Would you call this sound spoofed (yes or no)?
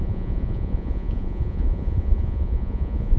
yes